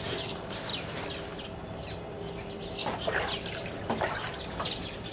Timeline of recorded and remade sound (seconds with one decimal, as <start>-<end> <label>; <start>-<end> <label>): 0.0-5.1 recorded